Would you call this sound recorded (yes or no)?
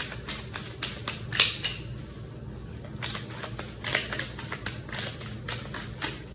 yes